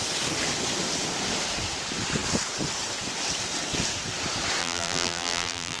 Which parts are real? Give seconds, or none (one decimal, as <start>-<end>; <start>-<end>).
0.0-4.6